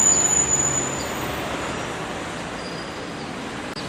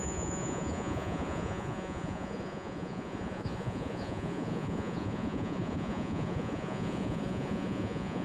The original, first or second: first